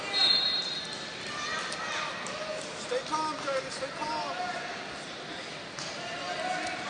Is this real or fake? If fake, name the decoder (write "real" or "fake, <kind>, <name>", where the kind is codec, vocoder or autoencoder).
real